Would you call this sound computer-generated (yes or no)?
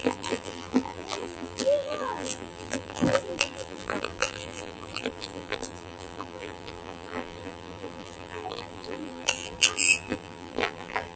yes